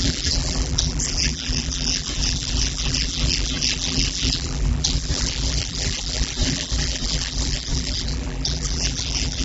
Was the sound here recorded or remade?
remade